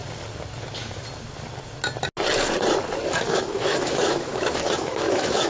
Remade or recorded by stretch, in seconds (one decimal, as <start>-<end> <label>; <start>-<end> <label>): 0.0-3.3 recorded; 3.3-5.5 remade